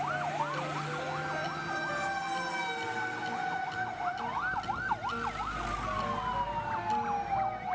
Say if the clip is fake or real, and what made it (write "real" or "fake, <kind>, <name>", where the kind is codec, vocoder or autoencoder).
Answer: real